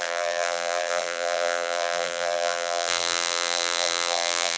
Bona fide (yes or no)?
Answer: no